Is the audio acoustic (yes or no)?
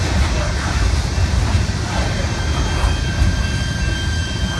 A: yes